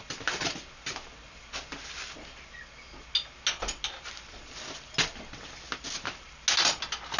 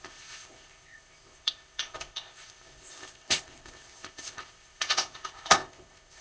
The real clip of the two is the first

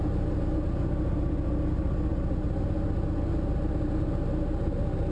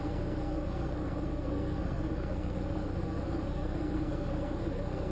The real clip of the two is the first